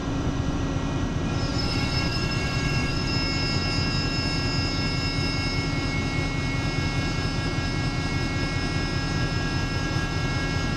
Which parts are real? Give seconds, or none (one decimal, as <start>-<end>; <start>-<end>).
0.6-1.5; 3.1-10.8